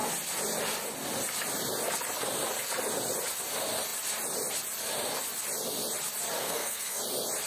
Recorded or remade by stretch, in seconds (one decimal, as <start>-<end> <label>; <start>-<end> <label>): 0.0-6.4 recorded; 6.4-7.0 remade; 7.0-7.5 recorded